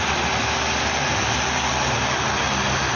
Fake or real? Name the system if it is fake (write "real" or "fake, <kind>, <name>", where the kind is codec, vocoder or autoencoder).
real